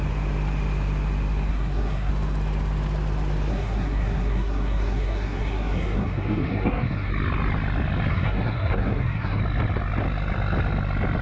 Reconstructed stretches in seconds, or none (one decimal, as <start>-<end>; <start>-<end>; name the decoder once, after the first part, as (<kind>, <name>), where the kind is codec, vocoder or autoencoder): 1.5-2.1 (codec, SNAC); 3.5-7.1; 8.1-9.4